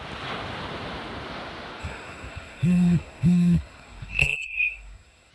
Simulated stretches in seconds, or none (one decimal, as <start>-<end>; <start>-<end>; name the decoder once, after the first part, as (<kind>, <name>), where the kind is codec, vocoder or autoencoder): 1.8-5.3 (codec, SNAC)